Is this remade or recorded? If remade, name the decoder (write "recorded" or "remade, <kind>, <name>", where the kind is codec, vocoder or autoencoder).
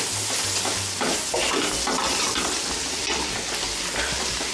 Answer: recorded